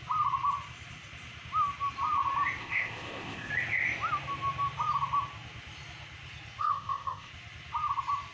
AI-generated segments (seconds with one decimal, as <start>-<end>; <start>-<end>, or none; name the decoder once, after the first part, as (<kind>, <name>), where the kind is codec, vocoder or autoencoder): 2.6-3.5 (codec, ZipCodec); 6.6-7.3